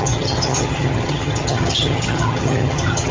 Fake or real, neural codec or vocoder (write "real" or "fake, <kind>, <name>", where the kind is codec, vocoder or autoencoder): fake, vocoder, HiFi-GAN